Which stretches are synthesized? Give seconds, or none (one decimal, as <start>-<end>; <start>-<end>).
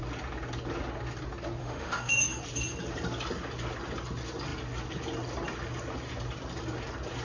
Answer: 1.6-2.4